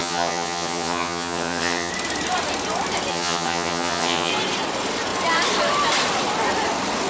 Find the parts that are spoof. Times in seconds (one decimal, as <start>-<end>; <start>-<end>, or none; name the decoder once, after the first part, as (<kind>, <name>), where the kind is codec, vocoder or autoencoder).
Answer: 0.0-1.9 (vocoder, HiFi-GAN); 3.1-4.3